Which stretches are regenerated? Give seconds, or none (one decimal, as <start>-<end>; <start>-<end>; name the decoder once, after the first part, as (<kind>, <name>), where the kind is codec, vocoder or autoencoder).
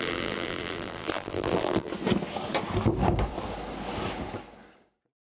0.0-1.9 (vocoder, BigVGAN v2)